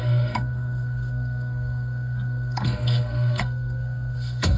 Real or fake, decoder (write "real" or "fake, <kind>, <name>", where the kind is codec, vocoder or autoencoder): fake, codec, SNAC